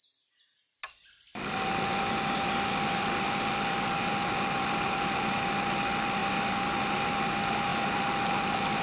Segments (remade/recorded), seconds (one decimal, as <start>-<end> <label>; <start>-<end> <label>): 0.0-8.8 recorded